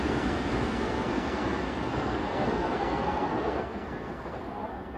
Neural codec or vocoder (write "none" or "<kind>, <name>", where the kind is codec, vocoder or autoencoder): codec, SNAC